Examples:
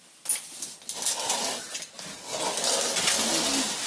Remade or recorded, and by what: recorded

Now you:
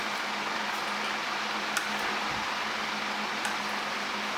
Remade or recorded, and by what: recorded